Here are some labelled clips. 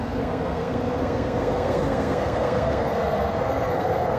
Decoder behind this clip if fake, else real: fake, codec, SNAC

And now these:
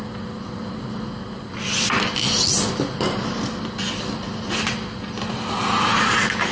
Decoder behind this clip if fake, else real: real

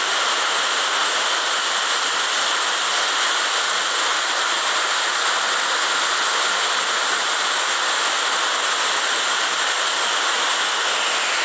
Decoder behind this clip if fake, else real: real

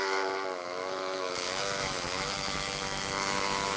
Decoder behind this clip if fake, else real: fake, autoencoder, DAC-VAE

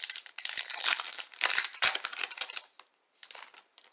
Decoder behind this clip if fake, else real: fake, vocoder, BigVGAN v2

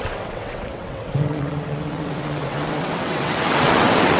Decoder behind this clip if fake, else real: fake, vocoder, WaveNeXt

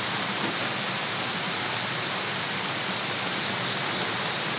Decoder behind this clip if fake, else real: real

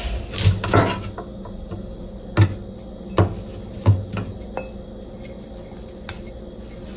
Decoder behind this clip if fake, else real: real